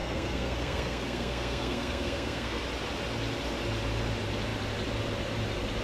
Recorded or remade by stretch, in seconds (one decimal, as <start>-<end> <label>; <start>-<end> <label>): 0.0-2.6 remade; 2.6-5.8 recorded